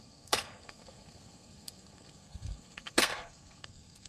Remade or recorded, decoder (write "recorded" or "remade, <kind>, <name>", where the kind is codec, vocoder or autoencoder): remade, codec, SNAC